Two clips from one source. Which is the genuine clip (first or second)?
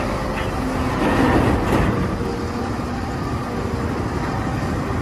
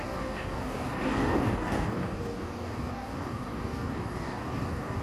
first